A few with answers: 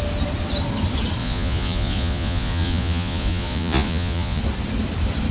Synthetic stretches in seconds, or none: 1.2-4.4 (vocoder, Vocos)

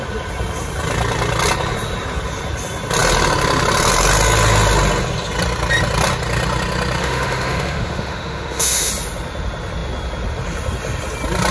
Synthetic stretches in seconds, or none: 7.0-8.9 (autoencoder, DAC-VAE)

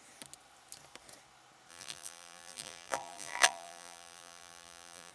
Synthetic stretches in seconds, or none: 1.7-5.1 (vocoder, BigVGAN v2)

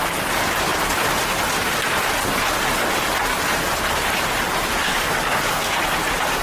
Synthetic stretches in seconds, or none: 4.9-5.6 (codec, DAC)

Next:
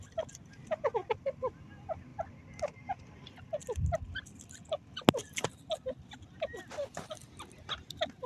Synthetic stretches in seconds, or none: none

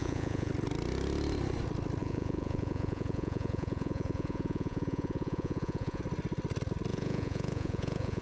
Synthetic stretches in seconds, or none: 0.0-0.5 (vocoder, Vocos); 2.0-6.0; 6.9-8.2

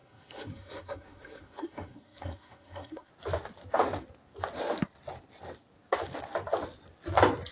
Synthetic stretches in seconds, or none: 0.0-3.1 (codec, SNAC)